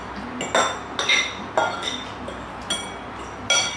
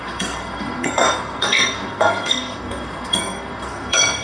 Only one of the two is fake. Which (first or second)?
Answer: second